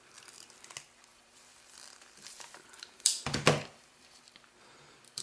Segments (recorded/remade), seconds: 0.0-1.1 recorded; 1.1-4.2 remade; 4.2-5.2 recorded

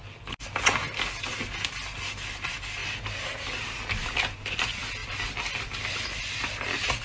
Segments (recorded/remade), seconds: 0.0-7.0 recorded